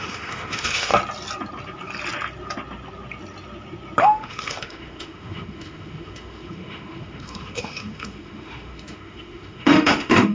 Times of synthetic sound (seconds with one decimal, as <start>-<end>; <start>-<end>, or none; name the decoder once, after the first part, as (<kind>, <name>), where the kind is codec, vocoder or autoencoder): 0.0-0.9 (autoencoder, DAC-VAE); 4.0-10.3